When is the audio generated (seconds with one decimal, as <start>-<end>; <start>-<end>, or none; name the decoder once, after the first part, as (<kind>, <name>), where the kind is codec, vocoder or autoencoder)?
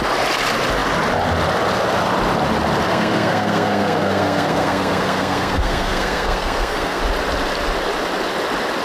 2.9-7.0 (codec, SNAC)